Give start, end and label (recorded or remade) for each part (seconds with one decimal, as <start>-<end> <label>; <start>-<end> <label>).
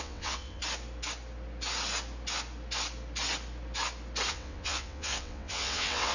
0.0-0.6 remade; 0.6-4.3 recorded; 4.3-6.1 remade